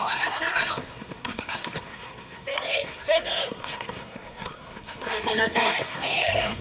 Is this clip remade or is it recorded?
remade